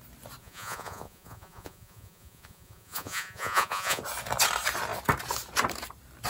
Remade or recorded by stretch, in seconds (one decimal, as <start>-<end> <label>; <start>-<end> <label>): 0.0-0.4 recorded; 0.4-4.0 remade; 4.0-6.3 recorded